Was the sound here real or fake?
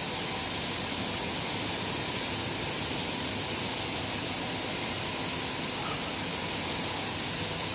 real